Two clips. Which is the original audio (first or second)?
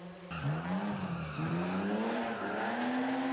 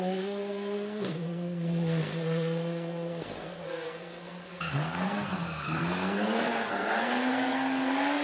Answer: first